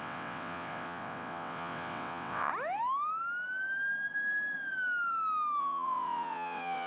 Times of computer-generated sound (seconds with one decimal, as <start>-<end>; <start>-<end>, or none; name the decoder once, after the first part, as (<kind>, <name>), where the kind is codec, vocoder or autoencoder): 0.0-2.5 (vocoder, WaveNeXt); 5.6-6.9